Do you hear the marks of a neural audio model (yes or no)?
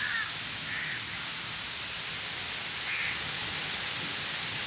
no